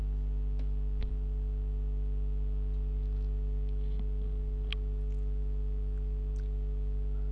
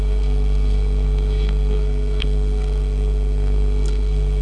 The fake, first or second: second